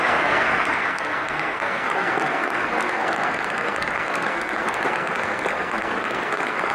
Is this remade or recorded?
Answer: remade